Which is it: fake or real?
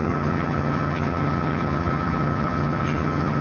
fake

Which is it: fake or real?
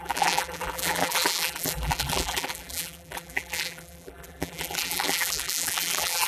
fake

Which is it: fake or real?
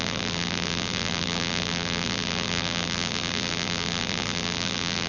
fake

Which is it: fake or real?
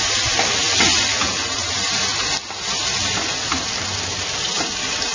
real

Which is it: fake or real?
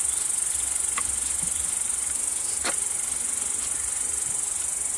real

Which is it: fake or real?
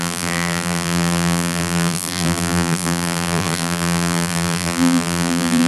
fake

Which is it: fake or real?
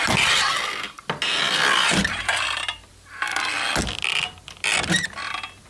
real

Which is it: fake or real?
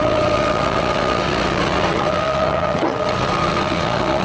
fake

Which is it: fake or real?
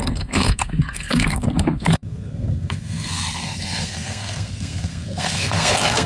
fake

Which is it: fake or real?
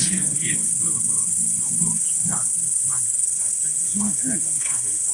fake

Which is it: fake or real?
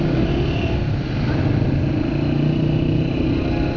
real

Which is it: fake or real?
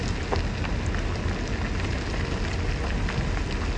real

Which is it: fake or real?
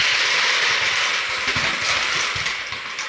real